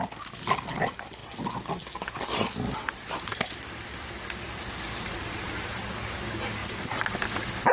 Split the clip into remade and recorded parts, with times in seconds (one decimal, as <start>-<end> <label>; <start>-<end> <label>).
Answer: 0.0-3.3 recorded; 3.3-5.8 remade; 5.8-6.6 recorded; 6.6-7.2 remade; 7.2-7.7 recorded